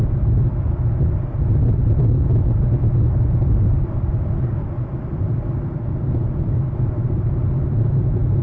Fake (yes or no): no